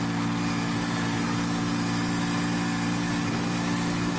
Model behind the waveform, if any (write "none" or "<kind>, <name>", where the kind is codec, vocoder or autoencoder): none